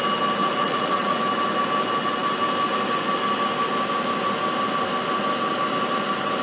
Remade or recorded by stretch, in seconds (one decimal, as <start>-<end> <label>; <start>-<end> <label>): 0.0-0.4 recorded; 0.4-1.2 remade; 1.2-6.4 recorded